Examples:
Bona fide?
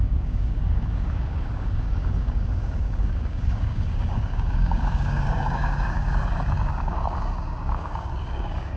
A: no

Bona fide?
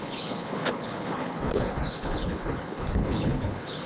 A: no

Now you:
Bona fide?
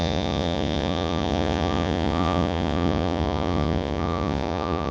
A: no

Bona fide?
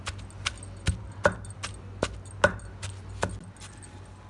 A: yes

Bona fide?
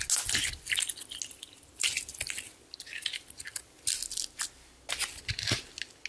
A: yes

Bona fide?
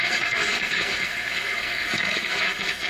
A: no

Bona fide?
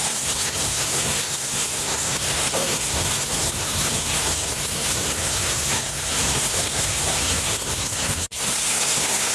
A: no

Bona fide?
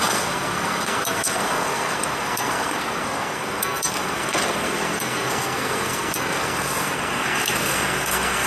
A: no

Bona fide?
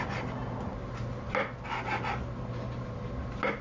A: yes